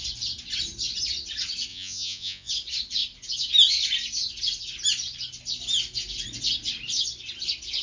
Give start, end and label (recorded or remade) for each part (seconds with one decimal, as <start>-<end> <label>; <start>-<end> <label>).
0.0-1.7 recorded; 1.7-2.5 remade; 2.5-7.8 recorded